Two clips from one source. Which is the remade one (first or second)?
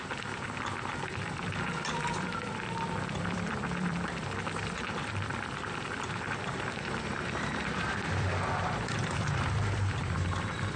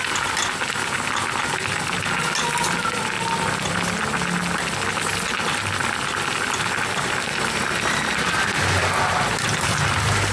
first